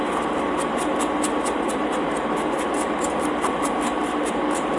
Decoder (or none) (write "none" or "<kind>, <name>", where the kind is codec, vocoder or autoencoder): none